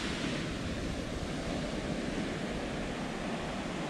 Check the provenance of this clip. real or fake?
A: real